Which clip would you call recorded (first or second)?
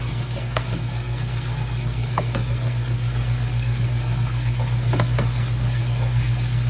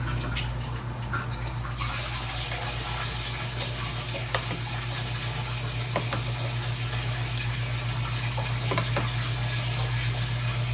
second